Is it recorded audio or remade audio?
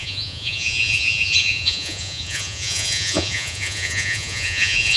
remade